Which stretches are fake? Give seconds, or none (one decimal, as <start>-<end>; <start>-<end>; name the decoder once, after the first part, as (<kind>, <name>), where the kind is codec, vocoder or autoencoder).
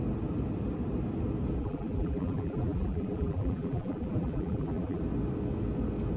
1.6-5.0 (vocoder, BigVGAN v2)